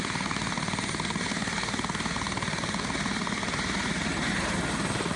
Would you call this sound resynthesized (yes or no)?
no